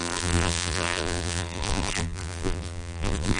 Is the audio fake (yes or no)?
yes